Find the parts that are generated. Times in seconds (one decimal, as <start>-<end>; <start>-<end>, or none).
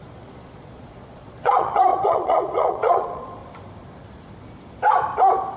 0.0-3.4